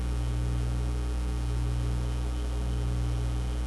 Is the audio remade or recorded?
recorded